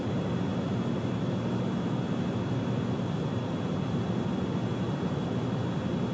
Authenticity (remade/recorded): recorded